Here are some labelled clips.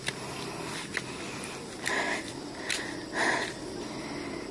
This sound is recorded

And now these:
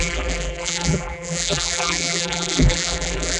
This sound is remade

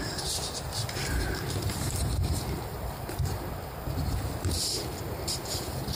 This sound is remade